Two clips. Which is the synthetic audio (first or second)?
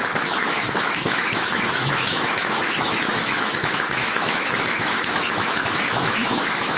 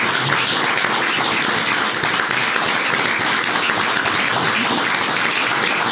first